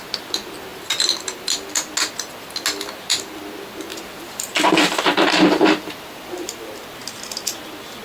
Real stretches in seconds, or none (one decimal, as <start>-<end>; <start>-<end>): 0.0-3.9; 6.6-8.0